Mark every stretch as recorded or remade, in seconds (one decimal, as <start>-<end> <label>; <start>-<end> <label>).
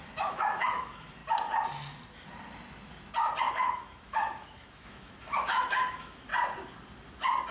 0.0-1.2 remade; 1.2-3.5 recorded; 3.5-6.3 remade; 6.3-7.5 recorded